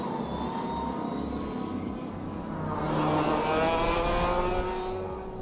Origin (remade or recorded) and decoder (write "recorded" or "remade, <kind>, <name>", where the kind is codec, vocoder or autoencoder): recorded